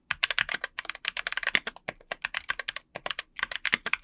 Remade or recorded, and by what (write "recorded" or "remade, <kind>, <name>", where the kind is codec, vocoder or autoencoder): recorded